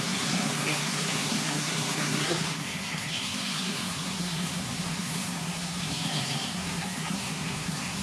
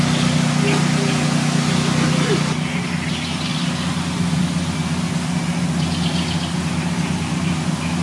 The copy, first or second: first